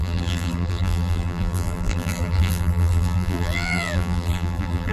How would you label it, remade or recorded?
remade